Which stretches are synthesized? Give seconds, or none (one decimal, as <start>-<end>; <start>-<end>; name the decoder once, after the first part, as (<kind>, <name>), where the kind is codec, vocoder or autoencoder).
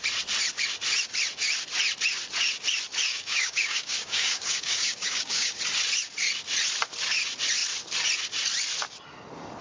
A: 3.1-5.6 (codec, DAC)